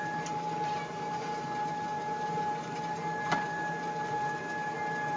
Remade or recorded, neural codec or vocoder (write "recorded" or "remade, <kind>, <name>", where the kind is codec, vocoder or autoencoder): recorded